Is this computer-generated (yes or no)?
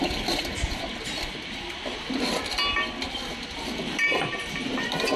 no